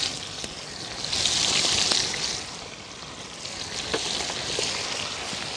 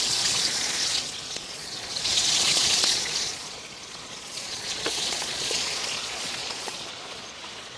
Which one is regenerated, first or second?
second